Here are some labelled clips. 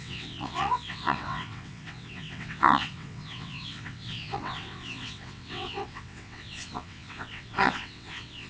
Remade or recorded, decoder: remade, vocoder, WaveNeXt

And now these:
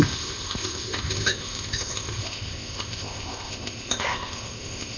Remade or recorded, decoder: remade, codec, ZipCodec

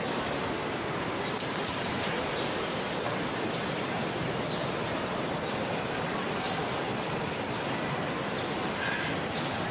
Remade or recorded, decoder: recorded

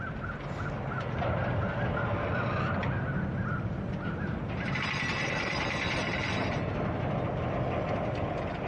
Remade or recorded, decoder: recorded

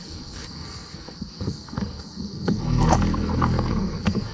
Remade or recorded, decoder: remade, codec, SNAC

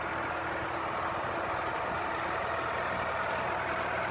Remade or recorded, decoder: recorded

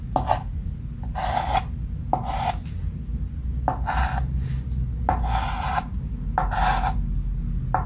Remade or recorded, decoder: recorded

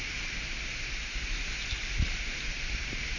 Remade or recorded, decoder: remade, vocoder, BigVGAN v2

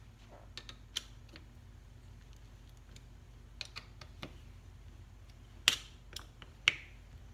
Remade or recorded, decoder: recorded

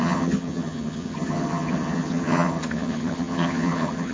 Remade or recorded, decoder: remade, vocoder, HiFi-GAN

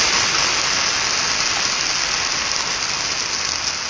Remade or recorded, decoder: recorded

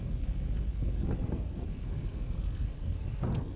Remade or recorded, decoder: remade, codec, SNAC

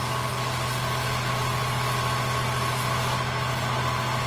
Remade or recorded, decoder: recorded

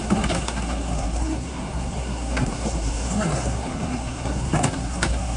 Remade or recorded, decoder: remade, codec, SNAC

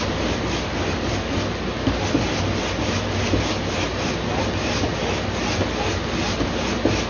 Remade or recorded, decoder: recorded